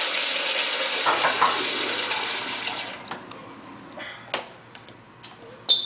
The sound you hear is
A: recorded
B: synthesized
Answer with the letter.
A